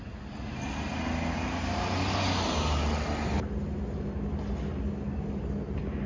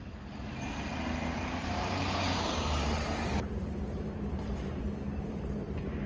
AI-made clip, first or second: second